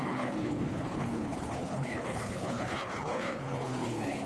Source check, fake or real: fake